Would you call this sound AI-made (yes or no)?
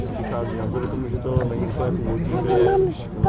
no